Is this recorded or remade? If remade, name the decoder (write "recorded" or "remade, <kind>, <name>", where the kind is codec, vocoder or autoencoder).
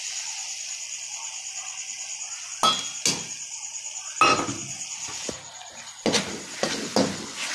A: recorded